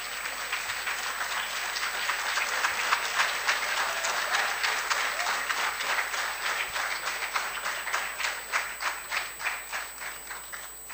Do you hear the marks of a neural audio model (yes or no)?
no